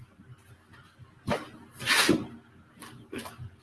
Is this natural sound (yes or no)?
yes